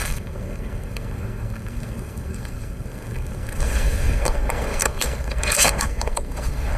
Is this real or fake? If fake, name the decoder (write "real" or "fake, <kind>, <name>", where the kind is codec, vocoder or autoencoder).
fake, codec, SNAC